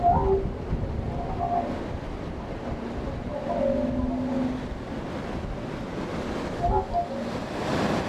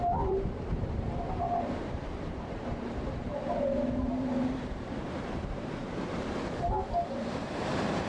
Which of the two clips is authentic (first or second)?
first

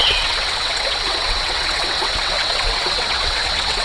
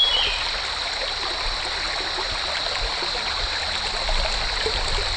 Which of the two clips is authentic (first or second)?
second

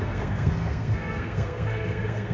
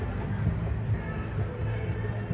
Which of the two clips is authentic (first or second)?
second